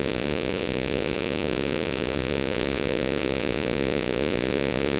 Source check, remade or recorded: remade